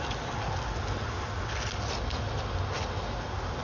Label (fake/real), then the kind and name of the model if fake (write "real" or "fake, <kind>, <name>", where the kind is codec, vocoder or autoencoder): real